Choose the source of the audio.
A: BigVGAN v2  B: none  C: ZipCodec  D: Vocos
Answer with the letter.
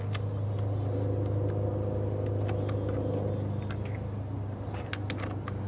B